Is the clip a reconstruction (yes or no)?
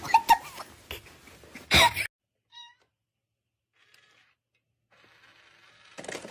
no